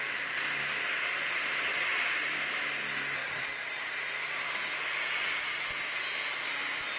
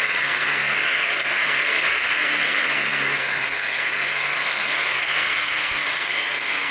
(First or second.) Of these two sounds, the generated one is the second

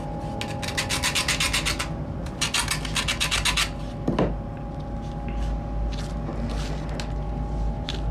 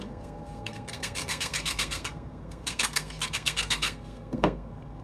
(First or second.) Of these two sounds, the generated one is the second